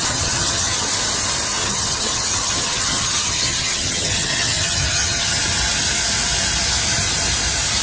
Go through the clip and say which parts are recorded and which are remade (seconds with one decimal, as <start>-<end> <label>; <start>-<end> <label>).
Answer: 0.0-0.9 remade; 0.9-1.5 recorded; 1.5-5.4 remade; 5.4-7.8 recorded